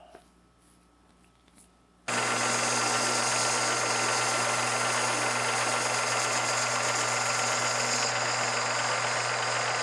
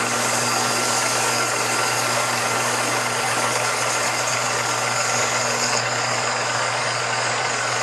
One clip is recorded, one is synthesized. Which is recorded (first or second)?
first